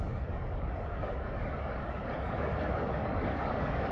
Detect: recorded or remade remade